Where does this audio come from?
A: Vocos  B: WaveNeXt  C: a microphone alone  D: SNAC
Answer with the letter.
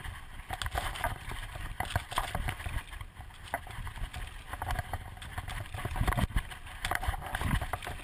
C